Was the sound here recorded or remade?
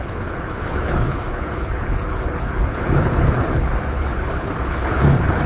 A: remade